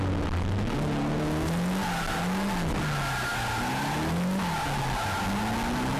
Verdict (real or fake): real